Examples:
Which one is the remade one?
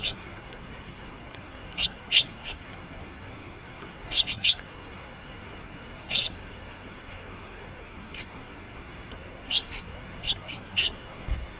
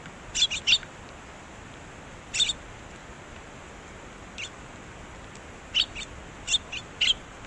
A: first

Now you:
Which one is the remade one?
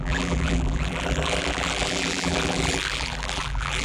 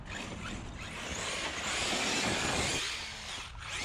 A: first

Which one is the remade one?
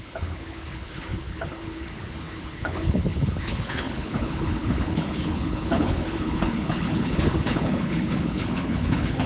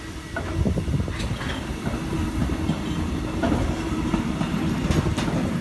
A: first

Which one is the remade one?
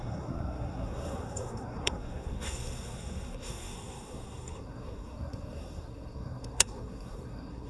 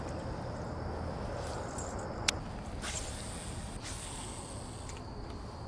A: first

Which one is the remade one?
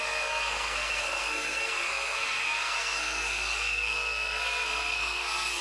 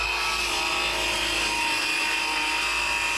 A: first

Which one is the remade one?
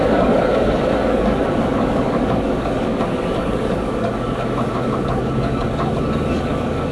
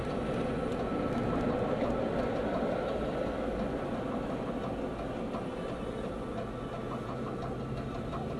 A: first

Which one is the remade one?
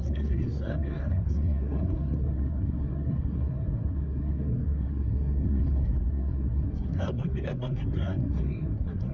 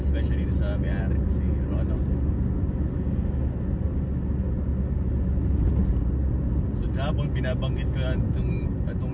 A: first